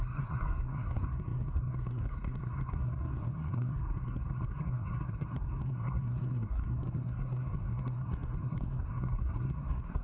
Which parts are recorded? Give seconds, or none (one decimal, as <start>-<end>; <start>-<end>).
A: none